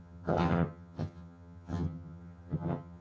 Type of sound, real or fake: fake